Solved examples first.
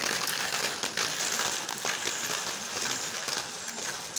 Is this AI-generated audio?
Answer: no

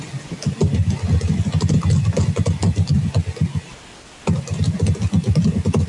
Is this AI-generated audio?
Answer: no